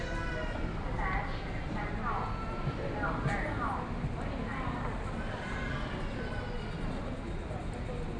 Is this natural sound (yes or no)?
yes